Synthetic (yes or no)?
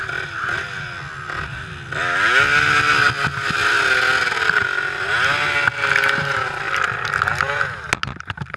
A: no